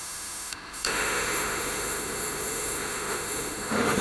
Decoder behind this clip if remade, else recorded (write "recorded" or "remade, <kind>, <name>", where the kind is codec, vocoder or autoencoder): remade, autoencoder, DAC-VAE